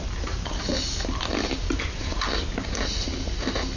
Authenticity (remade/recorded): recorded